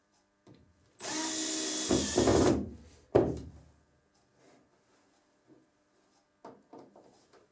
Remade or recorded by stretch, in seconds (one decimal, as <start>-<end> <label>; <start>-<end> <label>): 0.0-1.2 remade; 1.2-2.3 recorded; 2.3-4.9 remade; 4.9-7.5 recorded